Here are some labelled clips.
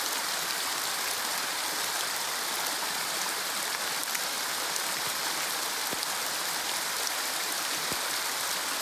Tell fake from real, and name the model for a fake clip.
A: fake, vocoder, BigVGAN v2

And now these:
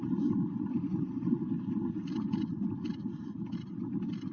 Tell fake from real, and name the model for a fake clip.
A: real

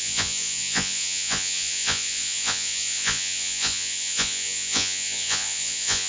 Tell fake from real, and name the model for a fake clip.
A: fake, vocoder, Vocos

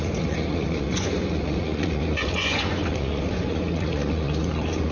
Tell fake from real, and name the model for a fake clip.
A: fake, vocoder, Vocos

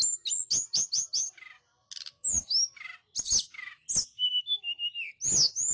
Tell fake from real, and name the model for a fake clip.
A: real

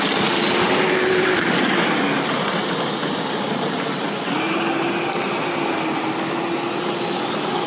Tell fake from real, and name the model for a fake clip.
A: real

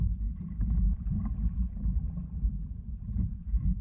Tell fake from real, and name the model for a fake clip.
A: fake, vocoder, BigVGAN v2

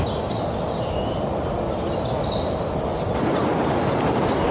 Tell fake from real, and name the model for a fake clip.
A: real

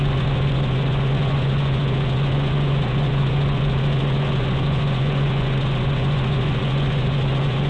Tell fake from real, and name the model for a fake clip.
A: fake, vocoder, Vocos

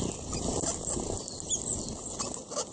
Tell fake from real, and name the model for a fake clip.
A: real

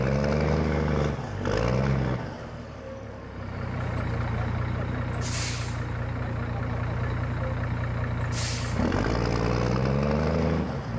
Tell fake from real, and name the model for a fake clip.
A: real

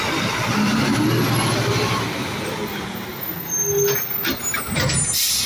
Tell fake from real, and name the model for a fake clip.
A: real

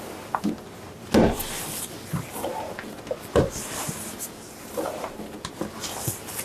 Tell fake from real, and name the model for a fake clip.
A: real